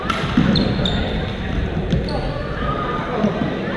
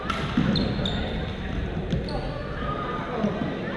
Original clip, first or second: second